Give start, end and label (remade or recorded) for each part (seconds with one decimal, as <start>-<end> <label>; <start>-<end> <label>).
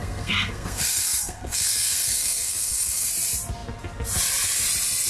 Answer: 0.0-3.1 remade; 3.1-5.1 recorded